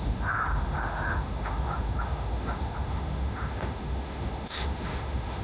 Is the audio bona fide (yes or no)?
no